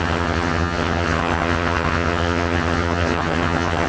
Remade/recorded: remade